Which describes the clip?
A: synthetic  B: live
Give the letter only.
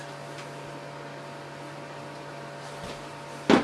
B